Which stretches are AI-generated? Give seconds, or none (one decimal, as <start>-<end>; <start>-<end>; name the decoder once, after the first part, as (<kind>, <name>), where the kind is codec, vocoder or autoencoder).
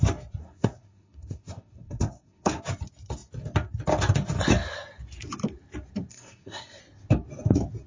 0.4-2.6 (codec, SNAC); 6.1-6.8